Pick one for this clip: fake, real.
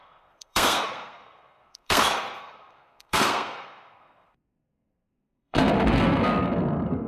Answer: fake